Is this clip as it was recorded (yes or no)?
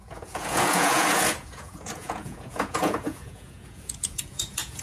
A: no